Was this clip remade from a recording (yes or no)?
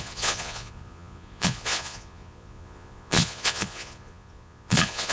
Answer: yes